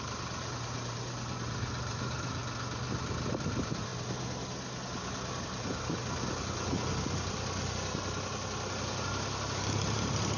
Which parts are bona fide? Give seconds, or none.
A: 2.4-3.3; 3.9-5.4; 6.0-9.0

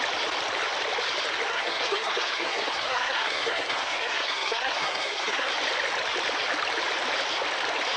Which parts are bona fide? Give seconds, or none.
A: 0.0-1.5; 5.5-8.0

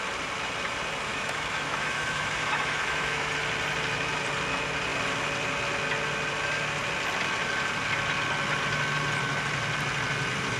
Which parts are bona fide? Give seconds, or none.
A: 0.0-1.1; 3.3-10.6

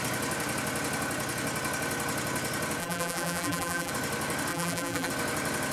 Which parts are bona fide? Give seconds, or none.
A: 0.0-2.8; 3.9-4.5; 5.1-5.7

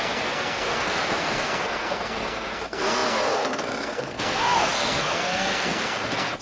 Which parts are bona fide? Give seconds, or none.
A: none

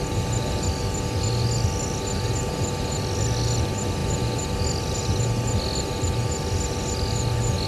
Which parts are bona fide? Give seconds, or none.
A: 0.0-7.7

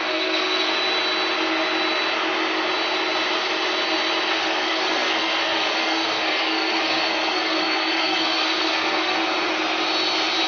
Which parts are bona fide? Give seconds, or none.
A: 0.7-4.3; 9.2-10.5